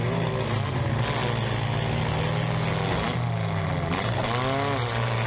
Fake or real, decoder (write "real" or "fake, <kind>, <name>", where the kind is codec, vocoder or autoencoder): real